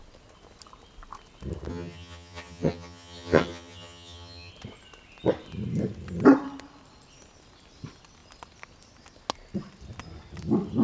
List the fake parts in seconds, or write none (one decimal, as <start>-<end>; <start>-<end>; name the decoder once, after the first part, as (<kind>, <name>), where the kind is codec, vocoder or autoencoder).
1.7-4.5 (vocoder, HiFi-GAN)